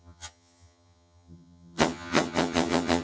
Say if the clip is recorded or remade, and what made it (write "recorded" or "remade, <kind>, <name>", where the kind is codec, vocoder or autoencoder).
remade, vocoder, HiFi-GAN